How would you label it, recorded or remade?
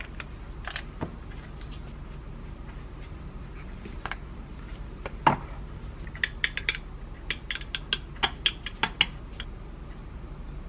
recorded